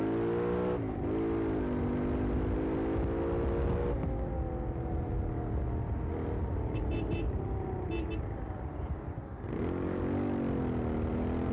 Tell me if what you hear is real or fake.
real